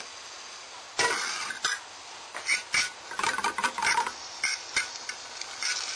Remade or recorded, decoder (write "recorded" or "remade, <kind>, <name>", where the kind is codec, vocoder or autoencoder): recorded